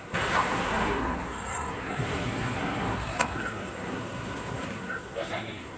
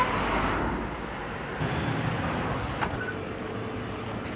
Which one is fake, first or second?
first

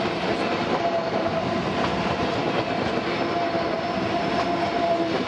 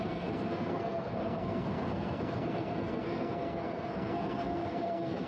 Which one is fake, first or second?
second